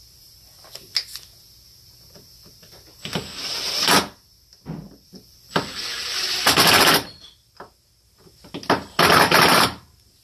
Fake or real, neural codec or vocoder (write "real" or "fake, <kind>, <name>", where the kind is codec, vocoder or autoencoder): real